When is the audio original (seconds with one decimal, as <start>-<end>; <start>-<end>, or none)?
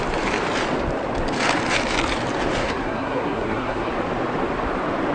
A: 0.0-2.6; 3.9-5.1